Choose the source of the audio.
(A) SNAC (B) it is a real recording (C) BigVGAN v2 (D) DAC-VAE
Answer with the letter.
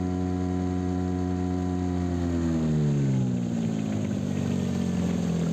B